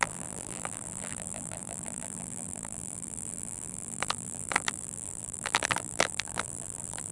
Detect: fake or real fake